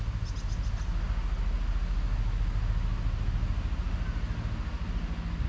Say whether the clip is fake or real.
real